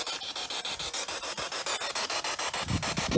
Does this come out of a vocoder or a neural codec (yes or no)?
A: no